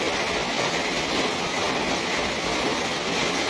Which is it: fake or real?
real